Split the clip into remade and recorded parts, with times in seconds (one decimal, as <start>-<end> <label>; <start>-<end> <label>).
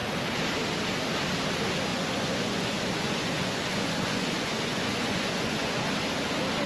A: 0.0-1.9 recorded; 1.9-5.9 remade; 5.9-6.7 recorded